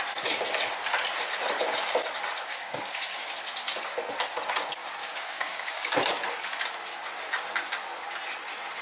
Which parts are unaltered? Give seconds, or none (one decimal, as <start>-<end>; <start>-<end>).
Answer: 0.0-2.5; 3.3-5.0; 5.9-8.8